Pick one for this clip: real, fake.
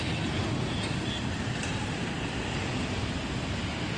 real